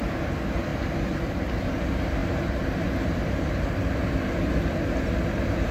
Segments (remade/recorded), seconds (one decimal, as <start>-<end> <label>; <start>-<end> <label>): 0.0-5.7 recorded